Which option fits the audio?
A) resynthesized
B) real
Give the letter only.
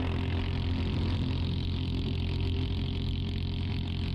B